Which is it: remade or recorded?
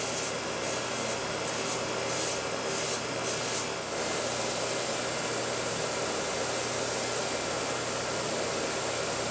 recorded